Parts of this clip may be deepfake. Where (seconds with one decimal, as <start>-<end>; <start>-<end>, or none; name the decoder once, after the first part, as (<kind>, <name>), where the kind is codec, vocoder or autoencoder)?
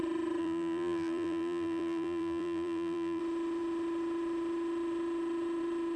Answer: 0.4-3.2 (vocoder, BigVGAN v2)